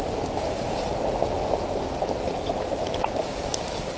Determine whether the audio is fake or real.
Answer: real